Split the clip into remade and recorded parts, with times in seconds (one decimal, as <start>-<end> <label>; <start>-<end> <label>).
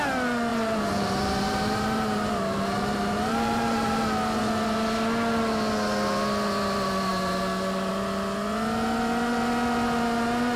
0.0-0.5 recorded; 0.5-4.0 remade; 4.0-10.6 recorded